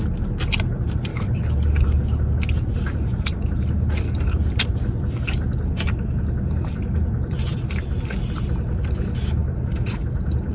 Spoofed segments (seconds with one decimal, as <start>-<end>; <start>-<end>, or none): none